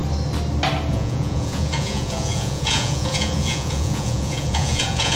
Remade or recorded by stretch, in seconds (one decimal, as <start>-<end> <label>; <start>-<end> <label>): 0.0-0.9 recorded; 0.9-5.2 remade